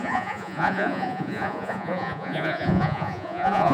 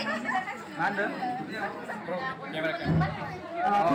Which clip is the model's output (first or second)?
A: first